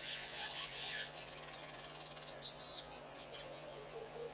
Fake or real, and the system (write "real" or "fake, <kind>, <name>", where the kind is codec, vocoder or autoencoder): fake, vocoder, Vocos